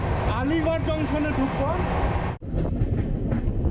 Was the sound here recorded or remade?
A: recorded